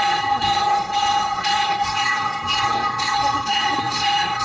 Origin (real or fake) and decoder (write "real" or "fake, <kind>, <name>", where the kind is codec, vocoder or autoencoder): fake, codec, SNAC